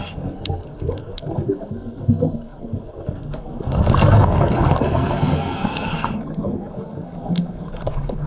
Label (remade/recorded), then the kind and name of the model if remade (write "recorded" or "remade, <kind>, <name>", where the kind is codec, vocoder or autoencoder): remade, codec, SNAC